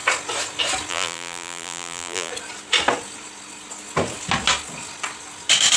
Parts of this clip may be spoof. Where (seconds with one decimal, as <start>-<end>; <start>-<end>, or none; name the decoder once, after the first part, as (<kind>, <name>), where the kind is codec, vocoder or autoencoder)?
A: 0.9-2.3 (vocoder, BigVGAN v2)